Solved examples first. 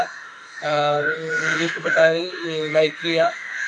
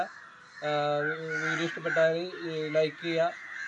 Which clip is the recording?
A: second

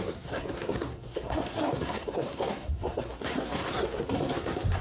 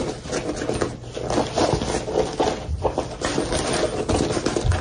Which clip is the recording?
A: second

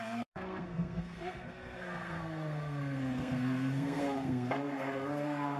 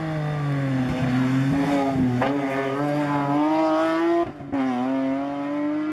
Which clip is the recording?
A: second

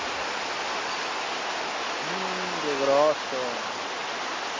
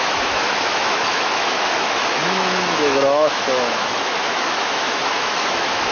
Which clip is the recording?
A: first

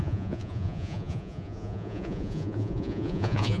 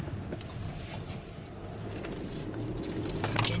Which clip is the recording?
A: second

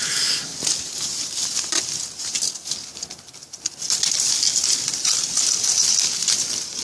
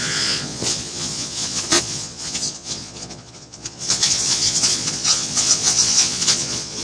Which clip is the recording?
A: first